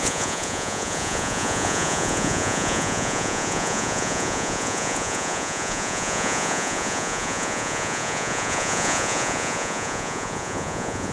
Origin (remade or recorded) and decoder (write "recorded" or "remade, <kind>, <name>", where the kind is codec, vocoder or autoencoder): remade, vocoder, Vocos